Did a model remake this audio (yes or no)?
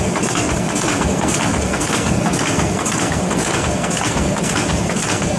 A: yes